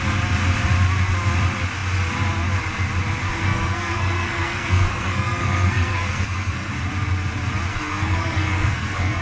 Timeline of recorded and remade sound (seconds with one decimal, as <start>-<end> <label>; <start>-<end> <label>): 0.0-3.2 recorded; 3.2-6.7 remade; 6.7-7.7 recorded; 7.7-9.2 remade